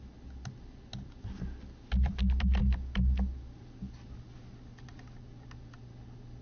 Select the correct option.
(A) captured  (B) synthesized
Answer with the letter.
A